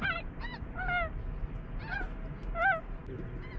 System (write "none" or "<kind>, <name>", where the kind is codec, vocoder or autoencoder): none